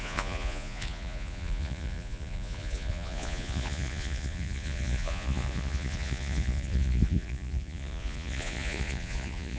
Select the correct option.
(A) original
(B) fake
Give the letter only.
B